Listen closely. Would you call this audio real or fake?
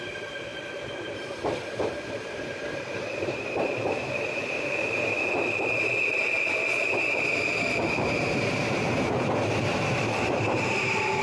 fake